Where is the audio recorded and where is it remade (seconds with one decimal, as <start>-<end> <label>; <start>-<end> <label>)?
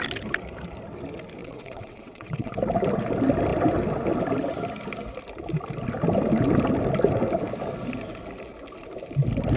0.0-1.4 recorded; 1.4-2.5 remade; 2.5-9.6 recorded